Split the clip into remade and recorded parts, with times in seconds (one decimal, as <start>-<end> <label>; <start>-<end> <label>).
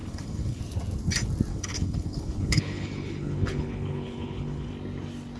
0.0-0.6 remade; 0.6-1.5 recorded; 1.5-4.7 remade; 4.7-5.4 recorded